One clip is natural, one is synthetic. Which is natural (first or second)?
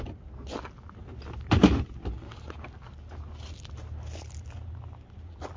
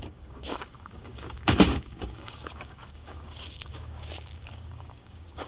first